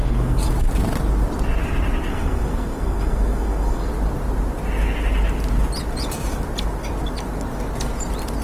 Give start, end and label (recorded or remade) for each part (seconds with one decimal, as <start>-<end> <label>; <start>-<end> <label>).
0.0-0.5 remade; 0.5-2.1 recorded; 2.1-3.9 remade; 3.9-8.4 recorded